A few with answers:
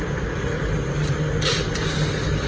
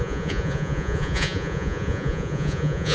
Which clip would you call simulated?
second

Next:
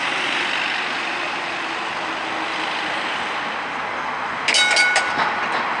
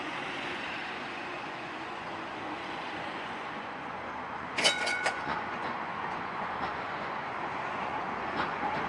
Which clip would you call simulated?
second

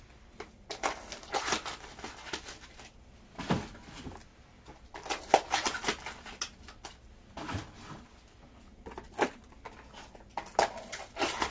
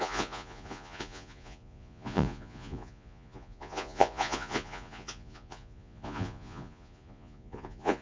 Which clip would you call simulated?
second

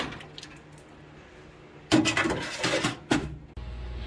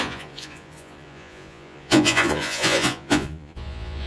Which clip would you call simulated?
second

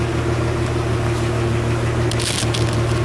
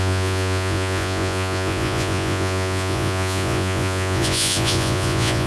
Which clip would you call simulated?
second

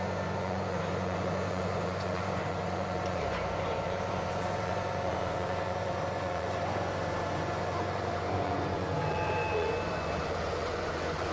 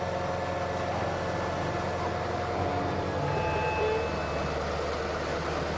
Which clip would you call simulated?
first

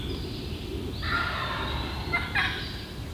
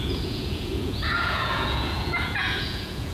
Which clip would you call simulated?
second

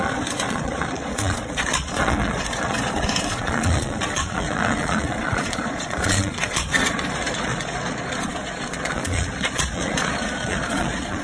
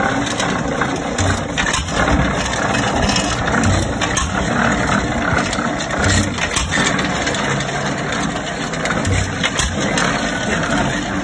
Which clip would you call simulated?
first